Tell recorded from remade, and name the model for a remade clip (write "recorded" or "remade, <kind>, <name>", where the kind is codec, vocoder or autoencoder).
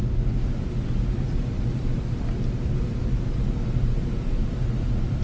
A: remade, vocoder, BigVGAN v2